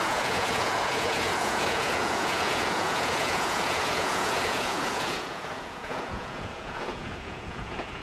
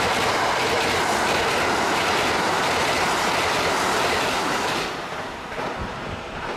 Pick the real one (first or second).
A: second